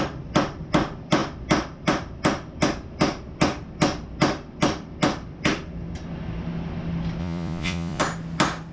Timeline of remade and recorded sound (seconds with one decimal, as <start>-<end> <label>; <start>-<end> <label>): 0.0-7.2 recorded; 7.2-8.0 remade; 8.0-8.7 recorded